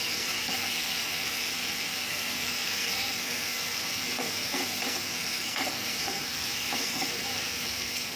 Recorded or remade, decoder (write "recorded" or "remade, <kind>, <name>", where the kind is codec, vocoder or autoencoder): remade, codec, SNAC